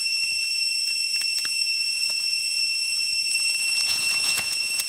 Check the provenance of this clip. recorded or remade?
remade